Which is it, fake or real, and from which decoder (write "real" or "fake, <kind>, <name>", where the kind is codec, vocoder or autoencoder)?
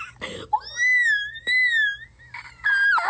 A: real